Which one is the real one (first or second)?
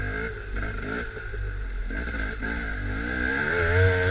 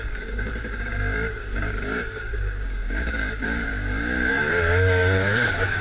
first